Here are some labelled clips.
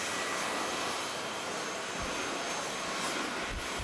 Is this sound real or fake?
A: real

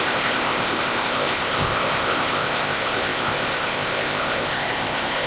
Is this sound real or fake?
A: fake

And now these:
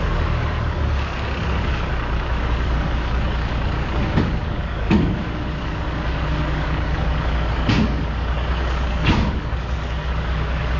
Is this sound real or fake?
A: fake